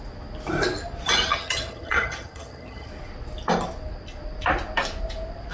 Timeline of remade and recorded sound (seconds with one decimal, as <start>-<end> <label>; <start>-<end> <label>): 0.0-1.3 recorded; 1.3-2.9 remade; 2.9-5.5 recorded